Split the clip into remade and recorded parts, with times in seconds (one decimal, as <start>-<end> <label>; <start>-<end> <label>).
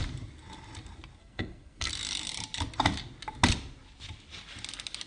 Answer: 0.0-1.2 recorded; 1.2-1.9 remade; 1.9-5.1 recorded